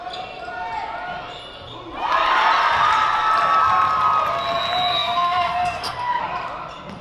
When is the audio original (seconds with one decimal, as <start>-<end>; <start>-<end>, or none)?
0.0-4.9; 6.2-7.0